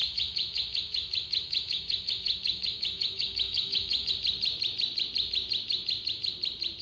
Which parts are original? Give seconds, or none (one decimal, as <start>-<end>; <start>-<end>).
4.1-6.8